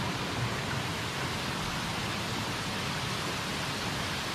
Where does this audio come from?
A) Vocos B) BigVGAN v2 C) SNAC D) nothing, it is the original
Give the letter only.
D